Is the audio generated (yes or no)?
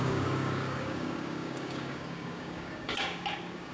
yes